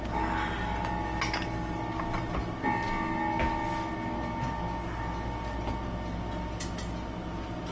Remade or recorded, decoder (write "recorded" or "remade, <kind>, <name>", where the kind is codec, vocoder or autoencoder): recorded